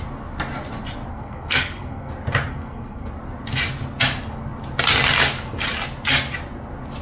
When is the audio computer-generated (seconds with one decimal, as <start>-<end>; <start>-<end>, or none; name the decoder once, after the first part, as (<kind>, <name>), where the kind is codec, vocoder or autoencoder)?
1.1-2.1 (codec, SNAC); 2.5-3.1